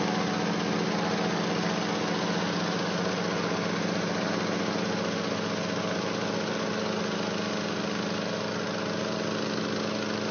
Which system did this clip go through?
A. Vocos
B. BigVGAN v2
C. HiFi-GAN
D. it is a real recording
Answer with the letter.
D